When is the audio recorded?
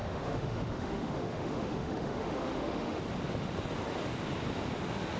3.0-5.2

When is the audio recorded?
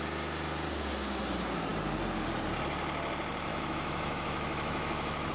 0.0-3.5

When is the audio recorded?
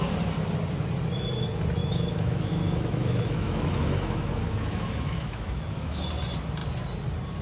0.0-1.8; 6.0-7.4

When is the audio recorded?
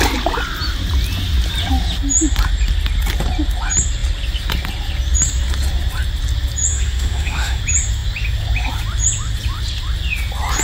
0.0-6.7; 7.6-10.6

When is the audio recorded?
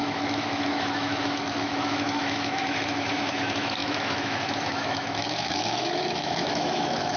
none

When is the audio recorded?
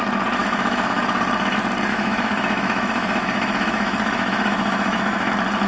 0.0-0.4; 1.0-1.9; 5.3-5.7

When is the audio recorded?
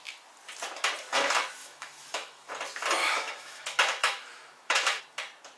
0.0-1.6; 2.5-3.0; 5.0-5.6